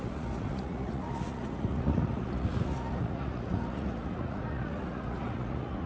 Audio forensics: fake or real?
fake